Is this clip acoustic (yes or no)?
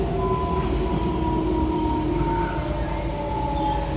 yes